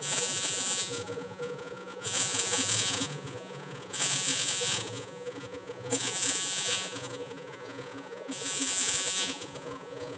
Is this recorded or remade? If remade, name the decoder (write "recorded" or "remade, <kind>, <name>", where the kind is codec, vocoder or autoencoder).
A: remade, vocoder, Vocos